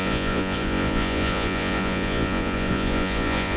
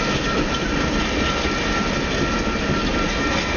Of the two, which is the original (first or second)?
second